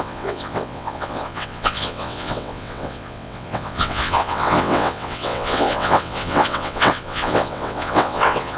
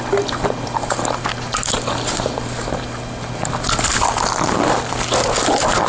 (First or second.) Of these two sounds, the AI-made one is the first